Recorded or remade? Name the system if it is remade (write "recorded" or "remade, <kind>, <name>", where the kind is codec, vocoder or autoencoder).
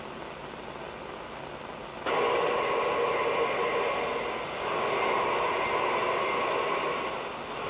recorded